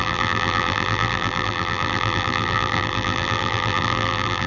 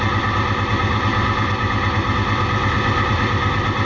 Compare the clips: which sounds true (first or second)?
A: second